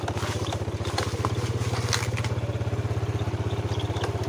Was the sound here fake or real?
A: real